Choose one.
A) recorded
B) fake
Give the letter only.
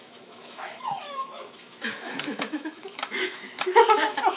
B